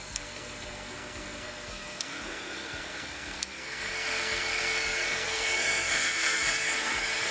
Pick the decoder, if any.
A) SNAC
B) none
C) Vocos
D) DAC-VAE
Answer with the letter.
A